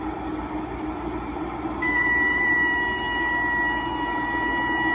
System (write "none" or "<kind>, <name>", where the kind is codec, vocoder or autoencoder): none